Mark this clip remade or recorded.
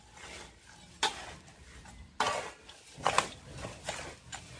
recorded